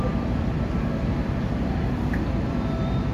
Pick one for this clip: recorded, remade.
remade